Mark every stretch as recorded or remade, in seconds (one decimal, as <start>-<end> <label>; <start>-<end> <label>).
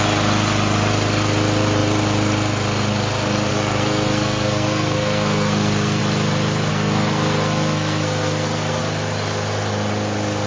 0.0-3.5 recorded; 3.5-6.0 remade; 6.0-6.7 recorded; 6.7-8.8 remade; 8.8-10.5 recorded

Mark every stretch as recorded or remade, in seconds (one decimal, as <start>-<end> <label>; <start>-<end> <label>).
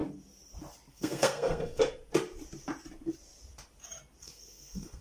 0.0-0.9 recorded; 0.9-1.8 remade; 1.8-4.2 recorded; 4.2-5.0 remade